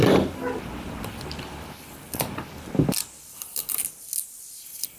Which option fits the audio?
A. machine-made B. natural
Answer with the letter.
B